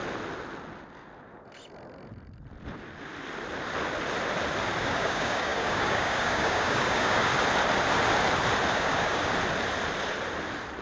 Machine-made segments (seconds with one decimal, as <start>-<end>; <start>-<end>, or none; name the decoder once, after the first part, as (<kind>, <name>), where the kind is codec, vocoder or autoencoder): 4.8-7.3 (codec, DAC); 8.7-9.3